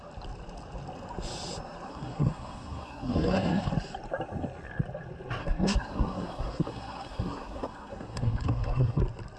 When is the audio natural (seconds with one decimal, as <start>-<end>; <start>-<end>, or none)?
0.0-1.9; 3.7-5.4; 9.0-9.4